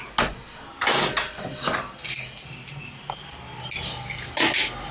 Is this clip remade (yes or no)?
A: no